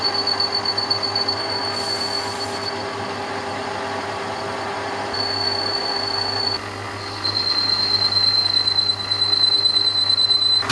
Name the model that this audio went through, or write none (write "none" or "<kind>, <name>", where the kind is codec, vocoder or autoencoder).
none